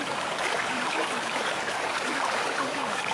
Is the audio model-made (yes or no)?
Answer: yes